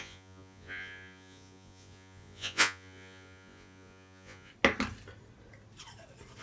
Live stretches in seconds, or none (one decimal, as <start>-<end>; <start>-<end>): 4.5-6.4